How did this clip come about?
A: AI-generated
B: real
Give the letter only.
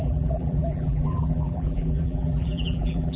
A